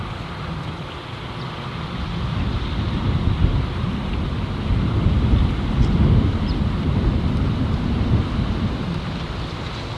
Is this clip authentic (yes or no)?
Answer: yes